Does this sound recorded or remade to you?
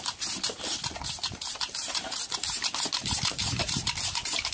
remade